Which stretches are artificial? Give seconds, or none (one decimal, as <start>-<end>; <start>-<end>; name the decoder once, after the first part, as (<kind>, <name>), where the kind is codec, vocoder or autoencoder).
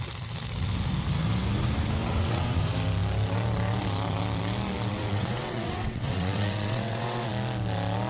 2.0-2.6 (vocoder, WaveNeXt); 4.9-7.3